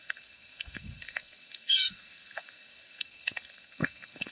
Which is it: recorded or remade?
remade